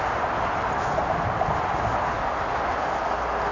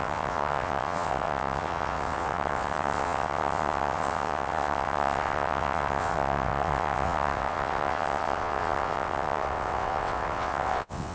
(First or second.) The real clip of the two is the first